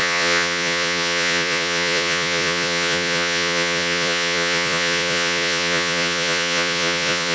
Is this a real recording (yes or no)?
no